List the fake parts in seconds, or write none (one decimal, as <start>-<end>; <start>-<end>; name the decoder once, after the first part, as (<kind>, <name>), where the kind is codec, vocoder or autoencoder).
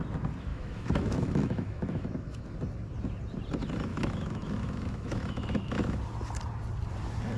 0.5-2.5 (autoencoder, DAC-VAE); 3.9-6.0